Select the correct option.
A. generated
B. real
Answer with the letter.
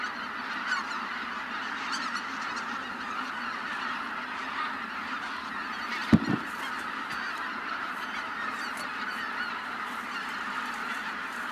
B